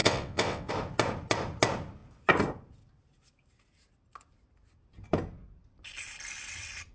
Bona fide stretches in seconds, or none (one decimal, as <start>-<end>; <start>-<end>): 0.7-6.9

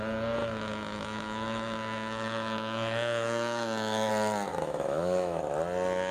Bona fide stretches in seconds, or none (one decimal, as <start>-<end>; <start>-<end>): 0.0-0.4; 4.1-4.5; 5.4-6.1

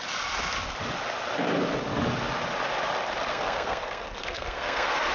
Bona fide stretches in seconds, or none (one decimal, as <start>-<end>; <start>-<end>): 0.0-3.3

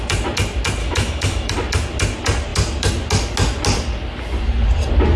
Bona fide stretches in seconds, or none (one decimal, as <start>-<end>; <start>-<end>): 0.0-0.8; 1.5-5.2

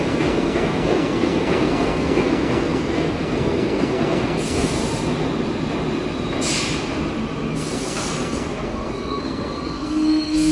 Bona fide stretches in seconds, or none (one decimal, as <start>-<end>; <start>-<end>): 4.8-7.5